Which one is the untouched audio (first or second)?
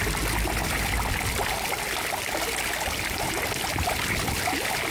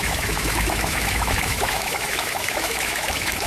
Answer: first